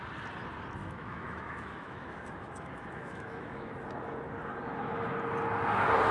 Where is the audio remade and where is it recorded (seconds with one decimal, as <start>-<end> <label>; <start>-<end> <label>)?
0.0-0.8 recorded; 0.8-3.7 remade; 3.7-6.1 recorded